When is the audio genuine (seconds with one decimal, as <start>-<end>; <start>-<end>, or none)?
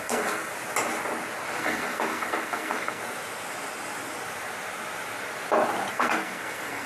0.5-1.6; 3.0-5.9